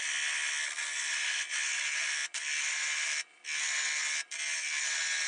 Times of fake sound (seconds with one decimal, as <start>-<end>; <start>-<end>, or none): none